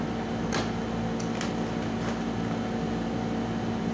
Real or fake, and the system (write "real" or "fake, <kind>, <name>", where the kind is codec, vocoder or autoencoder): real